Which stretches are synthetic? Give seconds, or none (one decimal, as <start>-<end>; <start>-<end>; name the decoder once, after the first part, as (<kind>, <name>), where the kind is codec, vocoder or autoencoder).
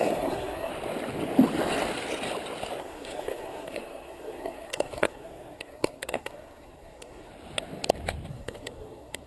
0.0-0.7 (codec, SNAC); 2.8-7.3; 8.3-9.3